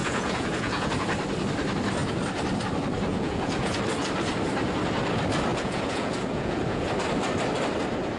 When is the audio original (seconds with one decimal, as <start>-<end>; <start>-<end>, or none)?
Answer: 0.9-3.1; 3.7-5.5; 6.9-8.2